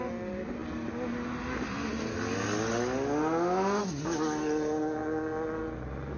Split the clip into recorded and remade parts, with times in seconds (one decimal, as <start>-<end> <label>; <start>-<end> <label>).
0.0-6.2 recorded